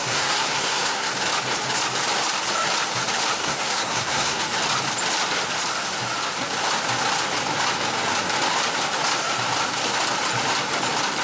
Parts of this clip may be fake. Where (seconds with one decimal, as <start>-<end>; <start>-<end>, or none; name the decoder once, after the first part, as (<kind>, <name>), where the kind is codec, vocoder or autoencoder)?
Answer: 0.0-1.1 (codec, SNAC); 3.4-4.4